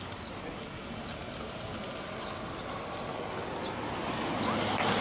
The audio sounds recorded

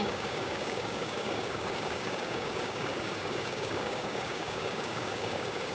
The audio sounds remade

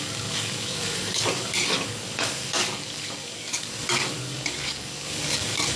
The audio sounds remade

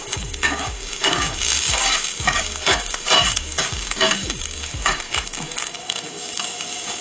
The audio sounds remade